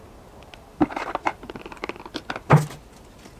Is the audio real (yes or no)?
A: yes